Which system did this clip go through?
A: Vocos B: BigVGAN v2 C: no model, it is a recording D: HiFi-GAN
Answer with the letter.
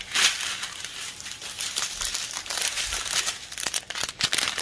C